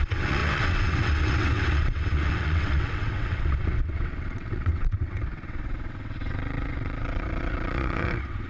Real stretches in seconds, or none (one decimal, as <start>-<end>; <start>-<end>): none